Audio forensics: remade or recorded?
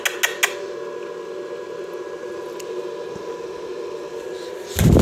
recorded